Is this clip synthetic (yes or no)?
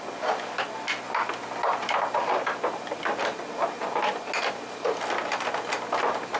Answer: no